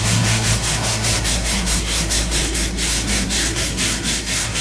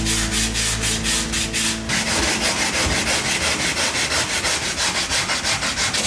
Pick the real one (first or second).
second